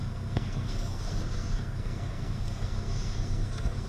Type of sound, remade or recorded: remade